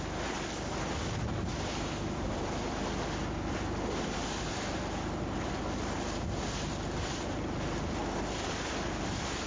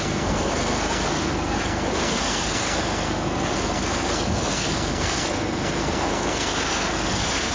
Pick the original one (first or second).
first